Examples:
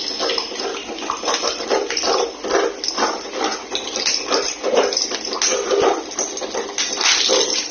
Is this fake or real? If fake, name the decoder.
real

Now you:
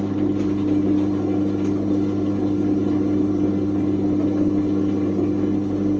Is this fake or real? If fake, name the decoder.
real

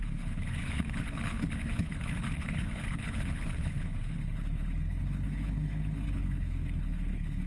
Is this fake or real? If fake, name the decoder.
fake, codec, HILCodec